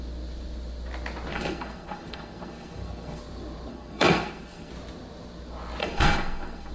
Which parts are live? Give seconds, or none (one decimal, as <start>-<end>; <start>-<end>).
0.0-1.3; 3.2-3.7; 4.7-5.8